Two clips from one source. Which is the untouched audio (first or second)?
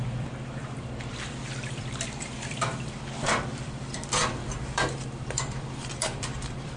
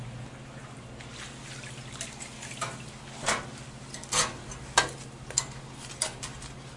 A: second